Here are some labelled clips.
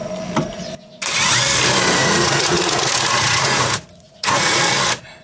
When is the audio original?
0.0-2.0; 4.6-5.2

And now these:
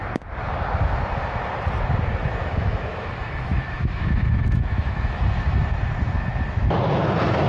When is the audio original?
0.0-2.4; 5.2-7.5

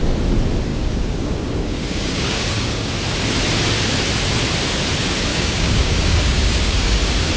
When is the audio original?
0.0-0.7; 2.9-5.3; 7.0-7.4